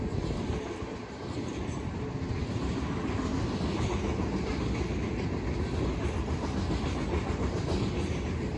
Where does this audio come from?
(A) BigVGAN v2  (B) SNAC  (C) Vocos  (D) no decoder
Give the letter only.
D